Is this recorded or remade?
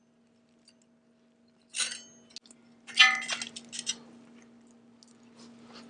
recorded